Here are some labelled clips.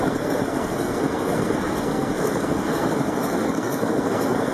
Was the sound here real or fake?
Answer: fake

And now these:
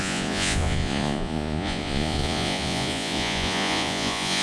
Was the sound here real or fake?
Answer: fake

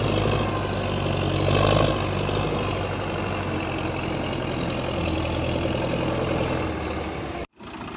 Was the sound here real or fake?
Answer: real